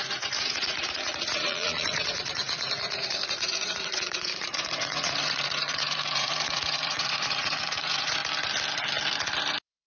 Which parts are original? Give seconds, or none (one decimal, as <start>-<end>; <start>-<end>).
8.2-9.9